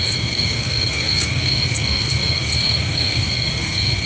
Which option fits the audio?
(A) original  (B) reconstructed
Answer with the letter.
B